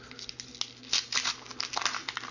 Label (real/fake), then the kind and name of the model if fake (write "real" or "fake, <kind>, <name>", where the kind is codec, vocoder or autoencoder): real